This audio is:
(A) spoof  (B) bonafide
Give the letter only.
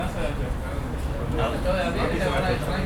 B